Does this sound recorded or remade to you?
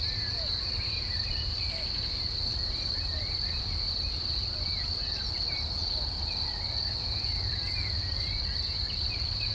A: recorded